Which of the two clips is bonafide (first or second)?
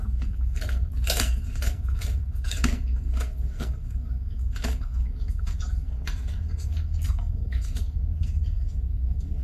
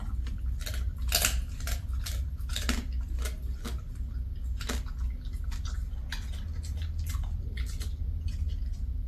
second